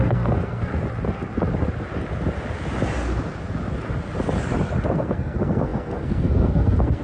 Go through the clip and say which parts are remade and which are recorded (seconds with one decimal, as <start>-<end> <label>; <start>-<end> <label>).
0.0-0.7 remade; 0.7-4.9 recorded; 4.9-7.0 remade